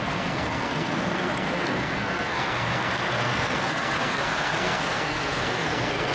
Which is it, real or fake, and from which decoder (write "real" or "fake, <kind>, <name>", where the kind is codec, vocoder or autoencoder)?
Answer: fake, codec, SNAC